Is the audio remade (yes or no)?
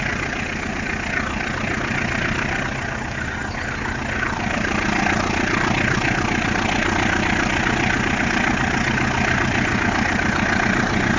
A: no